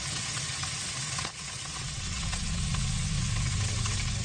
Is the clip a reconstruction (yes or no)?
yes